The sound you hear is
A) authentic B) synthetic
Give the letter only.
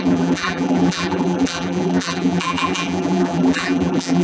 B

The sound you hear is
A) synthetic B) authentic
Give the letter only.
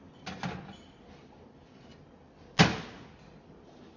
B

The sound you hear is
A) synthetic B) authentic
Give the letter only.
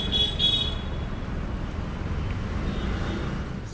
B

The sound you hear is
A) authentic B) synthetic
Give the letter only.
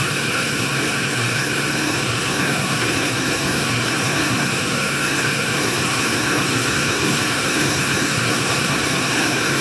B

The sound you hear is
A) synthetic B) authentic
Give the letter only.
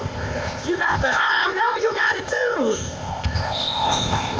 A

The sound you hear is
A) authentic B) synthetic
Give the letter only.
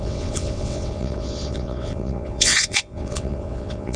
B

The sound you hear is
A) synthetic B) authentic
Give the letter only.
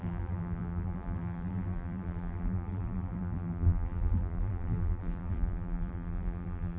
A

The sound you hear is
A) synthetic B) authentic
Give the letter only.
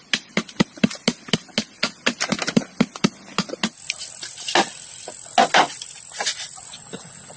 B